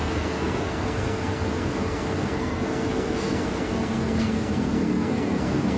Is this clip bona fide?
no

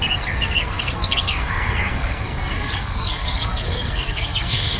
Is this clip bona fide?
no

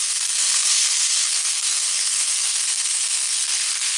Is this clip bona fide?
no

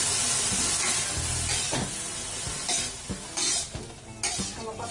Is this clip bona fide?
yes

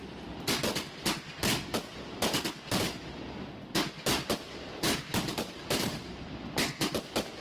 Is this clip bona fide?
yes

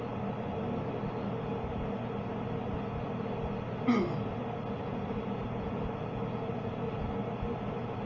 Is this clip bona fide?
yes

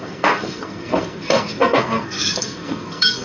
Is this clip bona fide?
no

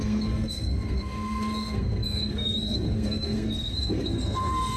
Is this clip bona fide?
no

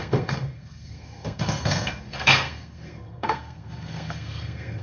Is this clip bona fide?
no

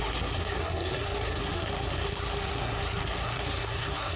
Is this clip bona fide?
no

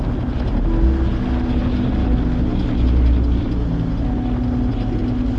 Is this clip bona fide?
yes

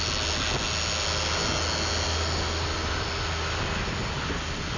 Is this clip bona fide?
yes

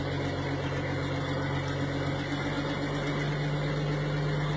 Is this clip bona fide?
yes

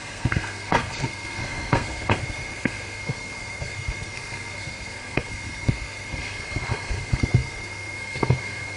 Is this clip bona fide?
no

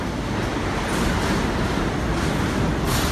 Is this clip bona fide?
yes